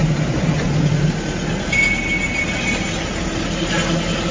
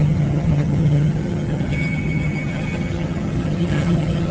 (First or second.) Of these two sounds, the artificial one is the second